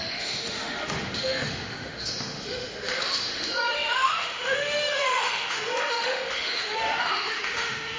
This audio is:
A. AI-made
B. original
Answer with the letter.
A